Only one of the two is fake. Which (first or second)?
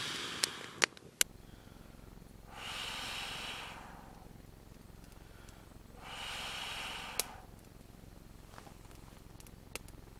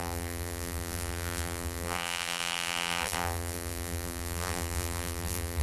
second